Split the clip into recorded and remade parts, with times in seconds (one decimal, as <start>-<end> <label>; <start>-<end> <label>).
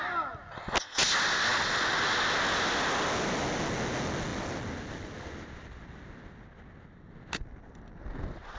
0.0-8.6 recorded